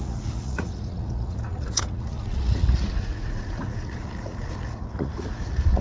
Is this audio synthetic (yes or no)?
yes